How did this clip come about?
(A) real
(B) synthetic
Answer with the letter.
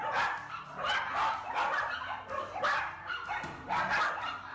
A